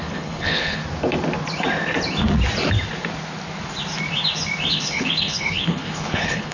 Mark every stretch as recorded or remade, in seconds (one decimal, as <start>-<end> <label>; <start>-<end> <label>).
0.0-0.8 remade; 0.8-4.7 recorded; 4.7-6.5 remade